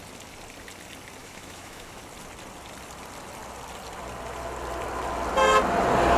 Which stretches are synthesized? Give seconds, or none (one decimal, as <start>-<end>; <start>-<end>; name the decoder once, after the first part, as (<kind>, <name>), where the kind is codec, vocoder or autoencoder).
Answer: 1.2-2.0 (autoencoder, DAC-VAE)